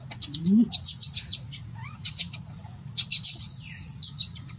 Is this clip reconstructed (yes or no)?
yes